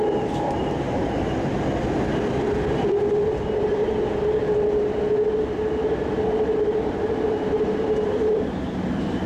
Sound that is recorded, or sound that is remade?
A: recorded